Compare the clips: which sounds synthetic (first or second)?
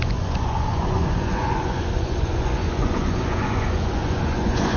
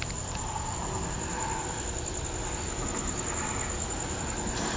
first